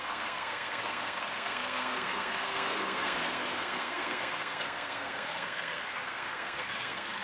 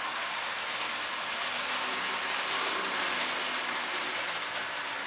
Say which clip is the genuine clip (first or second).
second